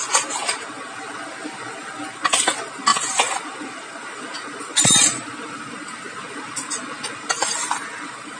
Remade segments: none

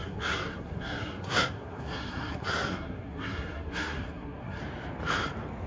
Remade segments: 0.0-4.6 (codec, SNAC)